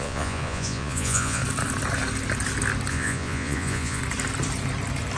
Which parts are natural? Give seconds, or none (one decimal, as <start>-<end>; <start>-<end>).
1.4-2.9; 4.0-5.2